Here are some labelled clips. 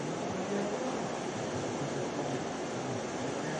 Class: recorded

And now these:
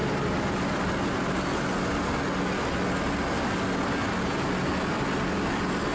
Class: recorded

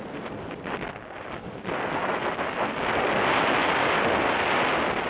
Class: recorded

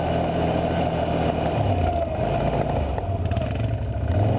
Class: recorded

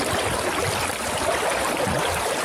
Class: remade